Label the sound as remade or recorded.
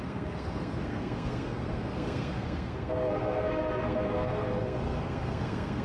remade